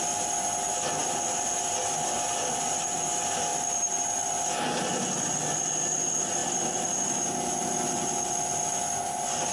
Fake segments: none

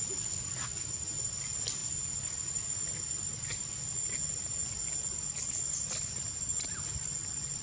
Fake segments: none

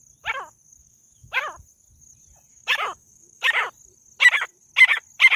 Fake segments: 0.8-1.4 (autoencoder, DAC-VAE); 2.5-3.5

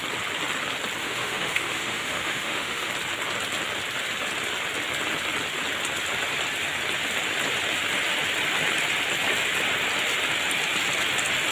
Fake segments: 1.0-2.9 (autoencoder, DAC-VAE)

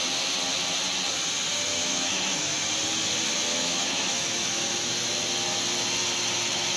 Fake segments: 1.7-2.6 (autoencoder, DAC-VAE); 3.5-4.9